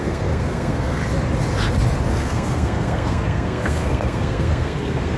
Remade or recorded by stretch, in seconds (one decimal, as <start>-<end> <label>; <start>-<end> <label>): 0.0-1.0 remade; 1.0-2.1 recorded; 2.1-5.2 remade